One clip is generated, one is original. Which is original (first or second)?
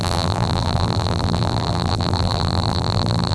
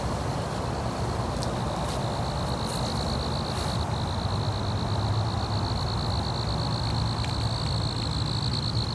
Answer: second